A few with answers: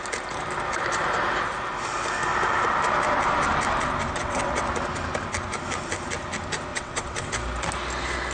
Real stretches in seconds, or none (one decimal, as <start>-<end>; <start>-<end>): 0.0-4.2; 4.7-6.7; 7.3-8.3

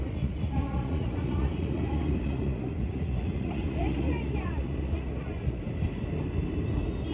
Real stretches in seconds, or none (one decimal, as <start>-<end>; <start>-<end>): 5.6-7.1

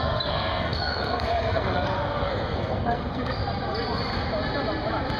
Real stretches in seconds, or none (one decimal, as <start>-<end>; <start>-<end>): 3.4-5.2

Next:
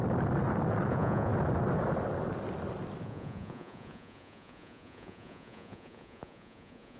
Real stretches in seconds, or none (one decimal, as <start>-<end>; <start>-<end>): 0.0-0.9; 1.3-3.0

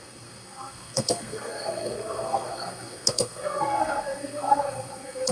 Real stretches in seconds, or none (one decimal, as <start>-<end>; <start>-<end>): none

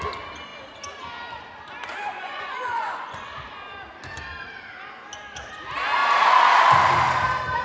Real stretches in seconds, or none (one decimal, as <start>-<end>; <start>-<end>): 0.0-2.1; 3.3-7.6

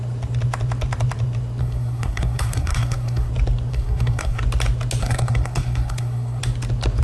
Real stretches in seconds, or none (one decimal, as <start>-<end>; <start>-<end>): 0.0-1.6; 3.3-3.7; 4.4-5.0; 6.4-7.0

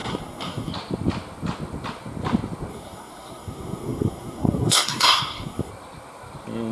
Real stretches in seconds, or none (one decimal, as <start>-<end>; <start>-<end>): 0.7-2.7; 5.7-6.7